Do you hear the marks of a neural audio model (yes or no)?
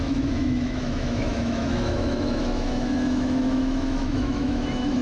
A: yes